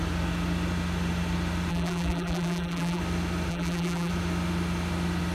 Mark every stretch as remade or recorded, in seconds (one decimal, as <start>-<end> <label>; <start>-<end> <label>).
0.0-1.7 recorded; 1.7-3.0 remade; 3.0-3.5 recorded; 3.5-4.1 remade; 4.1-5.3 recorded